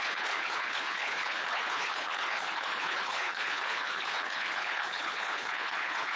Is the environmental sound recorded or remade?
remade